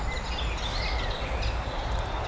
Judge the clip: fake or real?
real